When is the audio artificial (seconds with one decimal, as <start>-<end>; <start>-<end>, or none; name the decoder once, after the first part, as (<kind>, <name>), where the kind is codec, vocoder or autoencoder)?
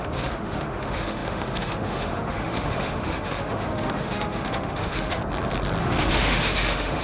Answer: 0.0-5.2 (autoencoder, DAC-VAE); 5.8-7.0